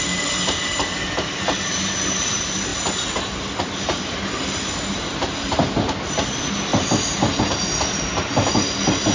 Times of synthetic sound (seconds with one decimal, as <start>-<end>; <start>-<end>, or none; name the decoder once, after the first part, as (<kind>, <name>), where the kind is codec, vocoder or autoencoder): 2.7-3.3 (vocoder, BigVGAN v2)